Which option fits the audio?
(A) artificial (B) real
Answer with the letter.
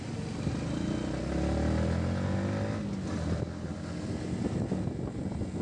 B